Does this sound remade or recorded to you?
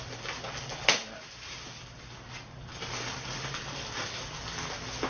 recorded